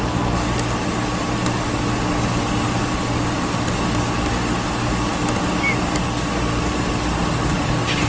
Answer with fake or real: real